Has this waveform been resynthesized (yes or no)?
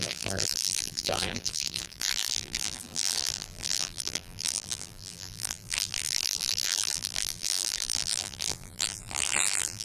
yes